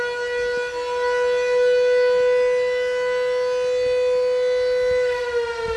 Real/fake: real